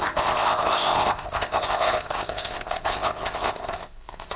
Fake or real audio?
fake